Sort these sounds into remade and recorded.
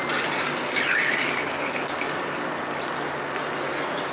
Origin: recorded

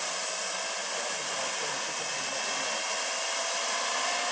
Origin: recorded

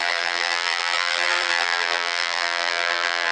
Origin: remade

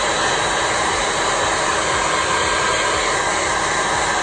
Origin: recorded